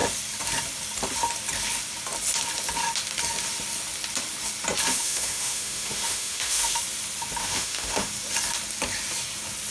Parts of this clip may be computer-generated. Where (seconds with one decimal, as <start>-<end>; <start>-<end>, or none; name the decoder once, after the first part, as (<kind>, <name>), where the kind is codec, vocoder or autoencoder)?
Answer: 4.9-6.8 (autoencoder, DAC-VAE); 7.4-8.1